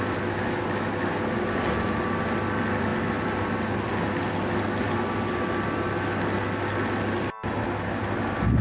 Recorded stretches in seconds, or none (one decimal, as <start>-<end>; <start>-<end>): 0.0-8.6